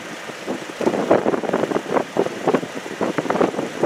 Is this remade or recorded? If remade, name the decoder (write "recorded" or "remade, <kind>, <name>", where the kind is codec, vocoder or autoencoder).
remade, vocoder, BigVGAN v2